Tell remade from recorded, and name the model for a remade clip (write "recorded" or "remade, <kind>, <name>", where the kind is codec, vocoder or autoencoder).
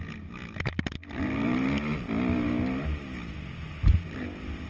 recorded